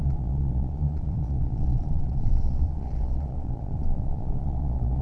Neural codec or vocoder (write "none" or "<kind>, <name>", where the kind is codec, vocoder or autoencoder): vocoder, Vocos